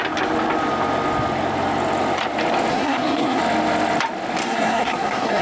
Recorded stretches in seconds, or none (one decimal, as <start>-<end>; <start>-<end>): 0.0-2.7; 3.4-4.4